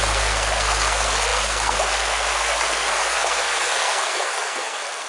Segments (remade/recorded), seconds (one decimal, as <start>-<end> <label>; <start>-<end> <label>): 0.0-5.1 remade